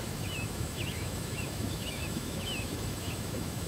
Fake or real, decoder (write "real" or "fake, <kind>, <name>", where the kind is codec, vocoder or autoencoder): fake, autoencoder, DAC-VAE